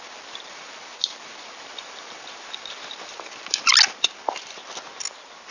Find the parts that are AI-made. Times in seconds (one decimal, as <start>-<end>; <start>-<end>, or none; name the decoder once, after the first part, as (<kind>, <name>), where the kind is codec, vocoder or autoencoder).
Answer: none